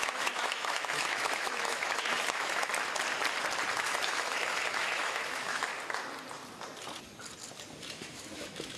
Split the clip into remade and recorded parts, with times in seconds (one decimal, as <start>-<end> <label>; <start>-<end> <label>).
0.0-2.7 remade; 2.7-3.7 recorded; 3.7-5.7 remade; 5.7-7.8 recorded; 7.8-8.8 remade